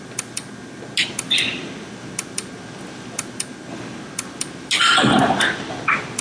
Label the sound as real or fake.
real